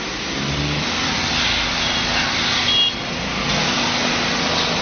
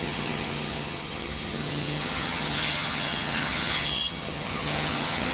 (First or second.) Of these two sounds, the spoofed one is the second